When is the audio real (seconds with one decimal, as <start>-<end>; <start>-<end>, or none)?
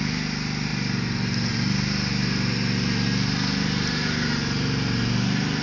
0.0-5.6